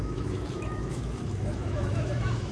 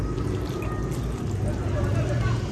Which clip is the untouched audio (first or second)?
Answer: second